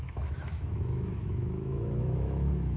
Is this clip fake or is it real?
fake